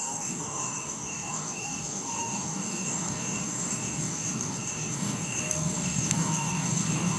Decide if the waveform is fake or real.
fake